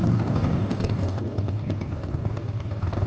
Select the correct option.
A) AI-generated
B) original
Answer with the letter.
A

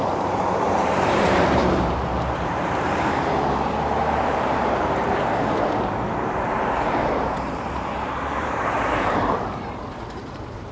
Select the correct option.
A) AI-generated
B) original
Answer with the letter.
A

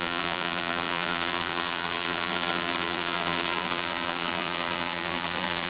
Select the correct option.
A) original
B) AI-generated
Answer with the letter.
B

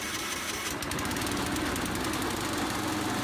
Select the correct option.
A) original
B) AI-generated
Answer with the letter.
A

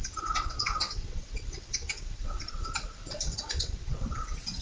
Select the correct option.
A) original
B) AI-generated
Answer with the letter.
B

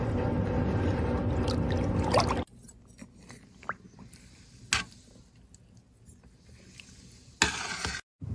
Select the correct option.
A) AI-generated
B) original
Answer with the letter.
B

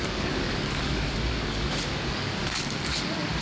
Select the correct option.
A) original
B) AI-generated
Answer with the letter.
B